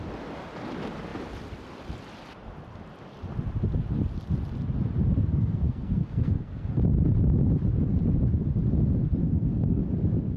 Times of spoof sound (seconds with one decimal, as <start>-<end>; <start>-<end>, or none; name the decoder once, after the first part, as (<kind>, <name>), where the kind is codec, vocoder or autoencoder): 5.3-6.8 (codec, SNAC); 9.2-9.8